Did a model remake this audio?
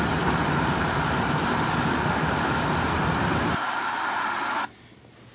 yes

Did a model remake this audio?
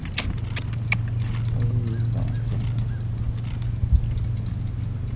no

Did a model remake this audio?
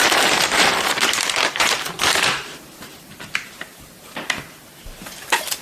yes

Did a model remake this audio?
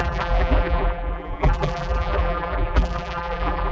yes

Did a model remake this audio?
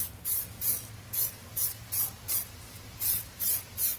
yes